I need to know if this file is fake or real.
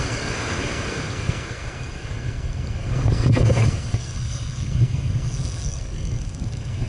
fake